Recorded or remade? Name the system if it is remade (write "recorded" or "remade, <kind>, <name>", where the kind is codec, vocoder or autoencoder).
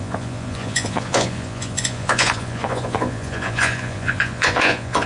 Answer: remade, vocoder, Vocos